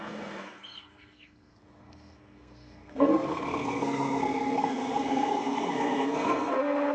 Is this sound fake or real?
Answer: fake